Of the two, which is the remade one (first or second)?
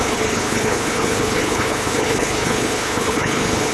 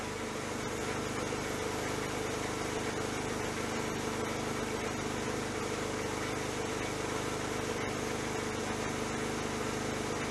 first